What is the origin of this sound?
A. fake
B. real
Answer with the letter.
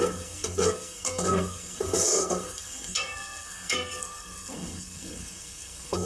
A